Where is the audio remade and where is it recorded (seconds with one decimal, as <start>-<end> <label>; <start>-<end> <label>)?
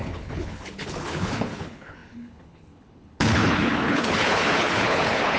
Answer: 0.0-5.4 remade